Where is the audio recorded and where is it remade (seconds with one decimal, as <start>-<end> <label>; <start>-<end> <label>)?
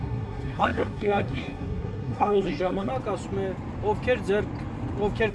0.0-2.9 remade; 2.9-5.3 recorded